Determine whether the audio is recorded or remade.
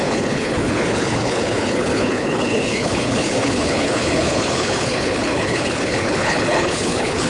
remade